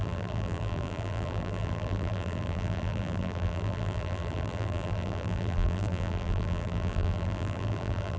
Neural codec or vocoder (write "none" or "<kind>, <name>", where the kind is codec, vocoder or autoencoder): vocoder, BigVGAN v2